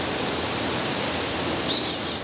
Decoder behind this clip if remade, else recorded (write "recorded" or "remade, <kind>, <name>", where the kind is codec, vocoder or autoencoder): recorded